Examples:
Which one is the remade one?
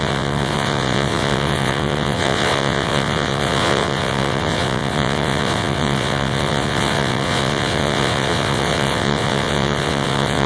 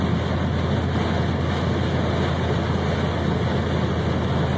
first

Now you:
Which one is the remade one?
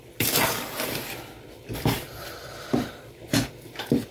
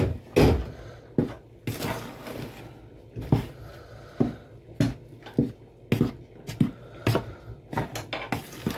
first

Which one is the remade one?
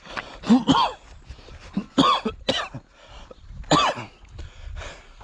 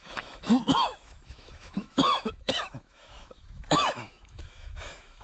second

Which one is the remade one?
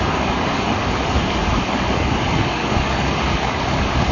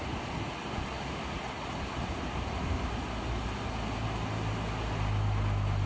first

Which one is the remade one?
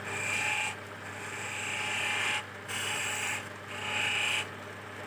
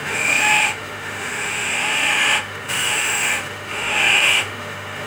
second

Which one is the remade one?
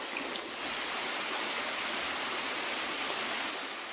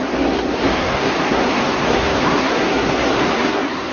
second